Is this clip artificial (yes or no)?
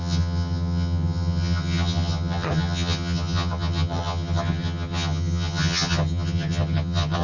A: yes